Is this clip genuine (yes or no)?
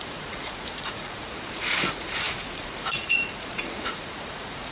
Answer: no